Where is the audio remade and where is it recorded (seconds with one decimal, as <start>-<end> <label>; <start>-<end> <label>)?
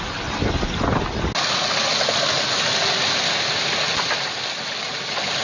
0.0-5.4 recorded